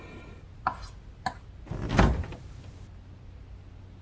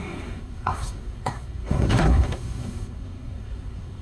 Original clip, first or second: first